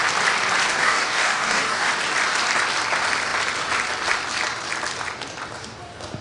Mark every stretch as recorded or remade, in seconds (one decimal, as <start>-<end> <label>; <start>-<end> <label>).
0.0-0.6 recorded; 0.6-1.9 remade; 1.9-6.2 recorded

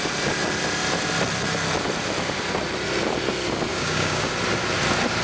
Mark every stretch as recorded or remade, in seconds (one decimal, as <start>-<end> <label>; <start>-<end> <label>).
0.0-3.7 recorded; 3.7-4.3 remade; 4.3-5.2 recorded

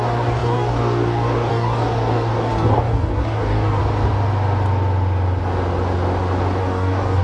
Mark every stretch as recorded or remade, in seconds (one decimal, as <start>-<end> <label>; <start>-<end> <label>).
0.0-3.8 remade; 3.8-6.6 recorded; 6.6-7.2 remade

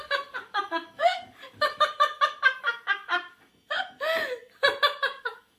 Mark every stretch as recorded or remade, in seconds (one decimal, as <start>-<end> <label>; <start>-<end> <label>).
0.0-2.1 remade; 2.1-2.6 recorded; 2.6-3.5 remade; 3.5-5.1 recorded; 5.1-5.6 remade